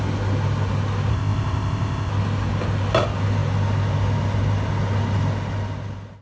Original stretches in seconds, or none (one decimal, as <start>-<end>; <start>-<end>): 0.0-1.1; 2.1-6.2